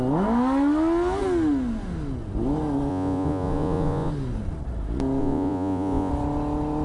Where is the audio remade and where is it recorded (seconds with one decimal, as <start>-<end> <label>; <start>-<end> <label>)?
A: 0.0-2.9 recorded; 2.9-4.1 remade; 4.1-5.2 recorded; 5.2-6.1 remade; 6.1-6.8 recorded